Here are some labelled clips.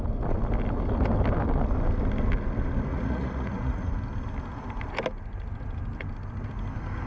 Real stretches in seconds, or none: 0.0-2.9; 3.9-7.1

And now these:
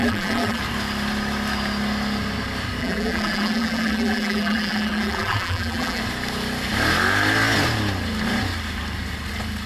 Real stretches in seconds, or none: 0.6-2.8; 6.0-9.7